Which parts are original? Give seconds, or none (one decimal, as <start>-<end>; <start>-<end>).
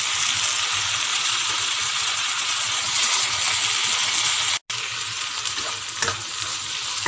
0.0-1.1; 3.4-7.1